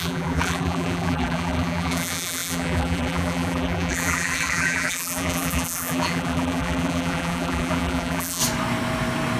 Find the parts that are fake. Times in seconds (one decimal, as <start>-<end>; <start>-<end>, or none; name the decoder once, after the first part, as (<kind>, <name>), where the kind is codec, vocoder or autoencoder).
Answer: 0.0-8.4 (vocoder, BigVGAN v2)